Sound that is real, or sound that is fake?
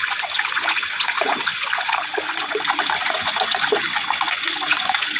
fake